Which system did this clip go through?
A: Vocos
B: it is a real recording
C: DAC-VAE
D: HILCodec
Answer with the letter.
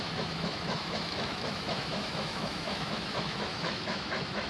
C